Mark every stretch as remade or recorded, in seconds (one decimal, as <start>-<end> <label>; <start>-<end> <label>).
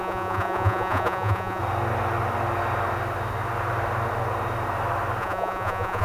0.0-1.6 remade; 1.6-5.2 recorded; 5.2-6.0 remade